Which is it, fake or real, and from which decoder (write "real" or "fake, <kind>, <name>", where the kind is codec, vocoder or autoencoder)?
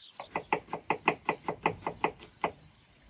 real